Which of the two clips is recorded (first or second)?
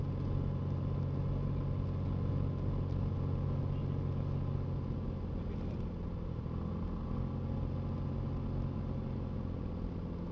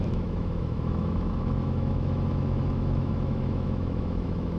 first